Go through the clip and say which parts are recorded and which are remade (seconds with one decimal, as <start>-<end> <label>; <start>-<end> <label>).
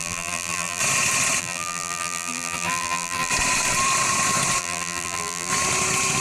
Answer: 0.0-0.8 remade; 0.8-1.4 recorded; 1.4-3.3 remade; 3.3-4.6 recorded; 4.6-5.5 remade; 5.5-6.2 recorded